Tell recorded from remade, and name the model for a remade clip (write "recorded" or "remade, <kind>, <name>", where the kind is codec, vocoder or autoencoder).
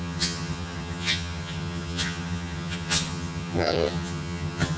remade, vocoder, HiFi-GAN